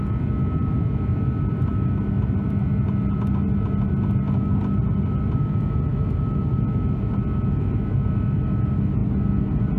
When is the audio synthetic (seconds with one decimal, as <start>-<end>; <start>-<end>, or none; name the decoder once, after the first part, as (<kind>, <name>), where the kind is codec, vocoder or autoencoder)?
none